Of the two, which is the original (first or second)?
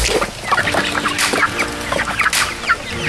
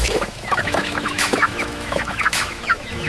first